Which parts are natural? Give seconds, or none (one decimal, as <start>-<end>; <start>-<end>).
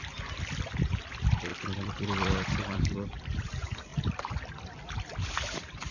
0.0-1.5; 3.2-5.9